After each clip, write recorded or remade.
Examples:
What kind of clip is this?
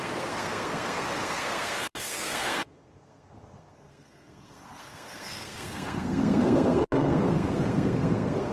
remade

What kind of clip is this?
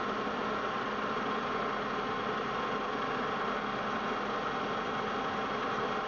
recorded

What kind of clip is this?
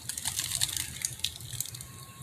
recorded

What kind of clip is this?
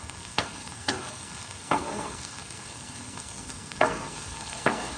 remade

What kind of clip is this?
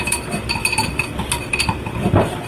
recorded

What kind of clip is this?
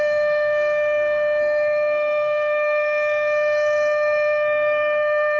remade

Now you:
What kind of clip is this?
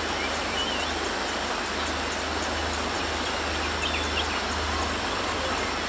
recorded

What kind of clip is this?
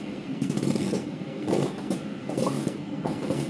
remade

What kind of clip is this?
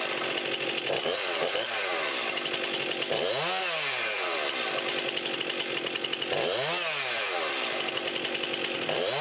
recorded